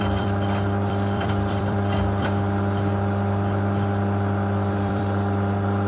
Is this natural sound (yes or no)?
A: no